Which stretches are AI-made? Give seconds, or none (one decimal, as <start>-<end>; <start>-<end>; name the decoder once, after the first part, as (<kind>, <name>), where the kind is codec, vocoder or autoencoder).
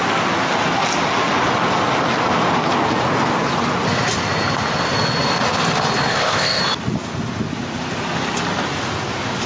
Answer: 6.1-6.6 (codec, ZipCodec)